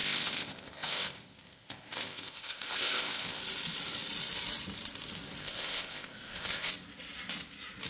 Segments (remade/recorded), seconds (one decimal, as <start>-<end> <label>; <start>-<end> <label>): 0.0-3.4 remade; 3.4-5.4 recorded; 5.4-6.7 remade; 6.7-7.9 recorded